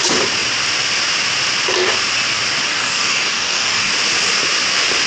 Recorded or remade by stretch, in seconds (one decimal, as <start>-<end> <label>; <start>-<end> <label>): 0.0-2.7 recorded; 2.7-3.9 remade; 3.9-5.1 recorded